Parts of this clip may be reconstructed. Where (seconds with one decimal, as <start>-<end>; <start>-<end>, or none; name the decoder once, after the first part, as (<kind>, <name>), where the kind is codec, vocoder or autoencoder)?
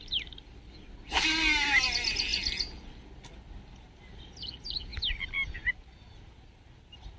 none